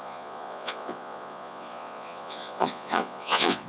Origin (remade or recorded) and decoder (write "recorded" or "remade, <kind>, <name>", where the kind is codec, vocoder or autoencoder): remade, vocoder, Vocos